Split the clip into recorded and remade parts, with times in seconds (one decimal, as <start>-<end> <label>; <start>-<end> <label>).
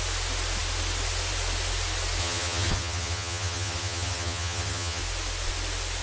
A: 0.0-2.2 recorded; 2.2-5.0 remade; 5.0-6.0 recorded